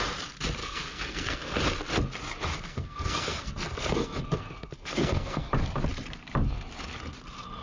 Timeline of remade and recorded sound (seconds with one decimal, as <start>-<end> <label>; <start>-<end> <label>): 0.0-0.6 recorded; 0.6-1.6 remade; 1.6-2.5 recorded; 2.5-5.5 remade; 5.5-7.6 recorded